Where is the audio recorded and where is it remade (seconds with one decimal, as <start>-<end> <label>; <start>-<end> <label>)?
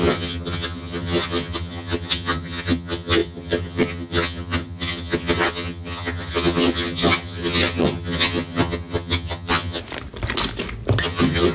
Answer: 0.0-9.8 remade; 9.8-11.0 recorded; 11.0-11.5 remade